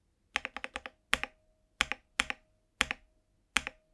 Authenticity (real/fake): real